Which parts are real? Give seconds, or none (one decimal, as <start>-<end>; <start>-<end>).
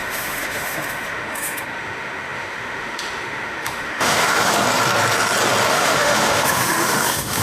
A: 4.6-5.7